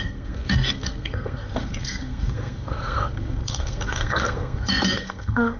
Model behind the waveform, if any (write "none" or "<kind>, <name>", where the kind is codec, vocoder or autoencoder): codec, SNAC